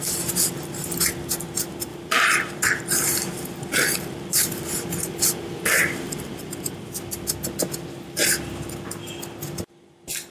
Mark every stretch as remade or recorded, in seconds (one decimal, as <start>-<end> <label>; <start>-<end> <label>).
0.0-1.9 recorded; 1.9-6.4 remade; 6.4-10.3 recorded